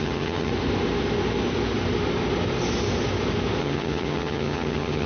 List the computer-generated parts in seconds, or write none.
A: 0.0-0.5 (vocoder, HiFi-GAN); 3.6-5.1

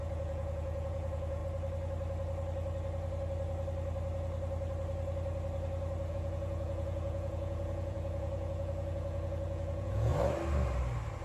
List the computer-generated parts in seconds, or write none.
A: 0.0-1.4 (vocoder, Vocos); 6.1-10.1

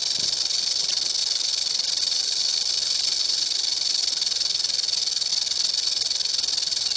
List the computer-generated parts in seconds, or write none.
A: none